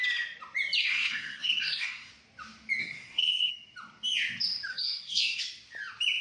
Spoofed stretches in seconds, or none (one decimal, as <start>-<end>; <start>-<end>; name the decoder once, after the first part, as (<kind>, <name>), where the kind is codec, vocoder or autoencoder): 0.8-2.1 (codec, SNAC); 2.8-3.5; 4.7-5.4